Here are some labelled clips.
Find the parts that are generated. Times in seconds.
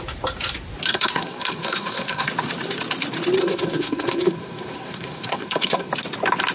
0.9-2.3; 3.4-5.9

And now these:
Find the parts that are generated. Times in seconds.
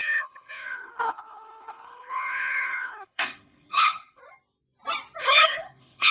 0.0-4.2; 5.2-6.1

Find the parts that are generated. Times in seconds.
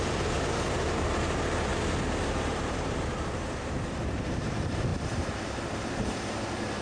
0.0-1.7; 2.2-6.8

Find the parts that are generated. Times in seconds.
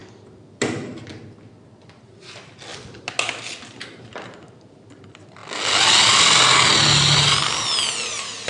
none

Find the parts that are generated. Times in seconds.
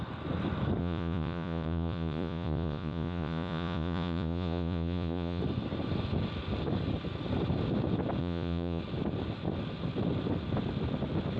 0.8-5.4; 8.2-8.8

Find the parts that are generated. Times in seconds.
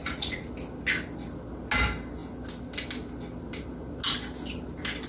0.0-0.5